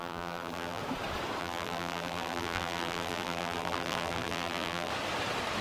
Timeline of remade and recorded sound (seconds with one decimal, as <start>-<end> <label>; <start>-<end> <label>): 0.0-0.8 remade; 0.8-1.4 recorded; 1.4-4.9 remade; 4.9-5.6 recorded